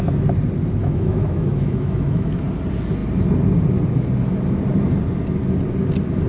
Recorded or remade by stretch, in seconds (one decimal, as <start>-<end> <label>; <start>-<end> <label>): 0.0-0.8 recorded; 0.8-2.4 remade; 2.4-6.3 recorded

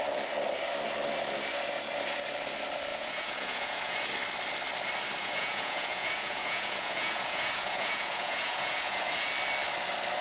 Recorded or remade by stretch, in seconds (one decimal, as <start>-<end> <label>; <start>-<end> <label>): 0.0-2.9 recorded; 2.9-4.1 remade; 4.1-5.2 recorded; 5.2-9.3 remade; 9.3-10.2 recorded